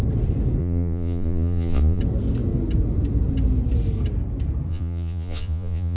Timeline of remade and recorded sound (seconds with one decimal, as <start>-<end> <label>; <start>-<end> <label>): 0.0-0.6 recorded; 0.6-2.0 remade; 2.0-4.7 recorded; 4.7-6.0 remade